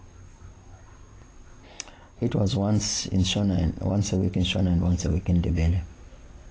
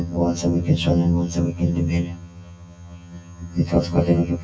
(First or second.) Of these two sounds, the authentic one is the first